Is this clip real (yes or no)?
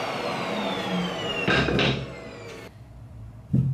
yes